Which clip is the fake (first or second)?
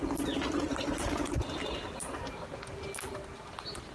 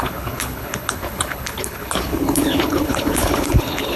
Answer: second